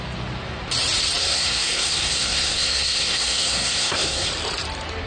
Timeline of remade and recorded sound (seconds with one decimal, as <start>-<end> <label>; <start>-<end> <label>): 0.0-1.2 recorded; 1.2-4.3 remade; 4.3-5.1 recorded